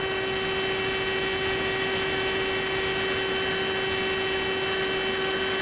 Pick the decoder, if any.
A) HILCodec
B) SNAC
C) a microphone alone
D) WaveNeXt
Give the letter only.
C